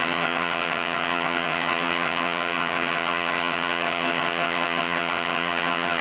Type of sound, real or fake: fake